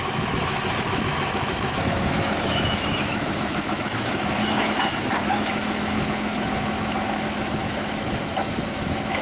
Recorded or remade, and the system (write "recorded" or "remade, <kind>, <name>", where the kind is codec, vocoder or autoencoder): remade, autoencoder, DAC-VAE